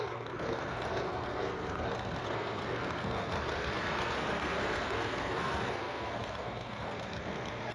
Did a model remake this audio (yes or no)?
yes